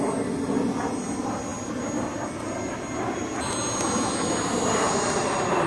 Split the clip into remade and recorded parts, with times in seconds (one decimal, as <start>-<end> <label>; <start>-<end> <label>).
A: 0.0-5.7 recorded